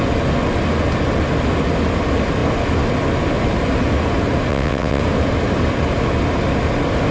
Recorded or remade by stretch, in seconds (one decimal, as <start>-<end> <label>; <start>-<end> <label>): 0.0-4.5 recorded; 4.5-5.0 remade; 5.0-7.1 recorded

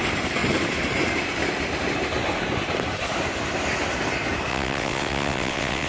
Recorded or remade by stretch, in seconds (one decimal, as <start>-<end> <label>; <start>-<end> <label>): 0.0-4.5 recorded; 4.5-5.9 remade

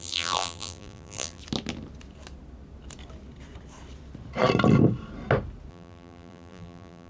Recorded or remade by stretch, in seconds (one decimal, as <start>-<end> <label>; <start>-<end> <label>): 0.0-1.4 remade; 1.4-5.7 recorded; 5.7-7.1 remade

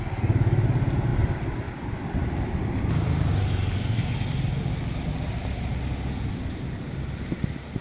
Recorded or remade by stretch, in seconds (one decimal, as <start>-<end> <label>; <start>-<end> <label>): 0.0-1.1 recorded; 1.1-3.3 remade; 3.3-7.8 recorded